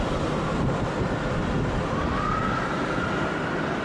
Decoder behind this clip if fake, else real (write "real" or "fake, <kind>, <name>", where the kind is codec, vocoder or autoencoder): real